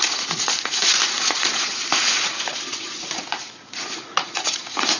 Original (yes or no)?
no